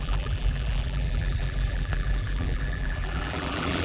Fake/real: fake